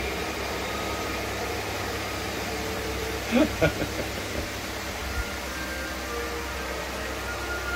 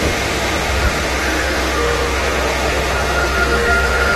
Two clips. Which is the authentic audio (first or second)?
first